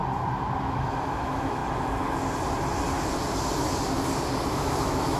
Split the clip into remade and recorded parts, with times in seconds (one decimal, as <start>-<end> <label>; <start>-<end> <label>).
0.0-0.6 recorded; 0.6-1.6 remade; 1.6-4.5 recorded; 4.5-5.2 remade